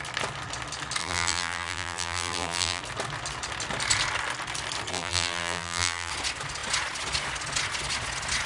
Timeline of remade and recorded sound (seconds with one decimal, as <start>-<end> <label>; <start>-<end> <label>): 0.0-1.0 recorded; 1.0-2.8 remade; 2.8-4.9 recorded; 4.9-6.1 remade; 6.1-8.5 recorded